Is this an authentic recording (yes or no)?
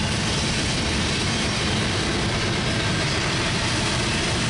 no